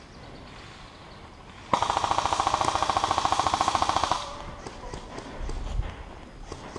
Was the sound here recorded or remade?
recorded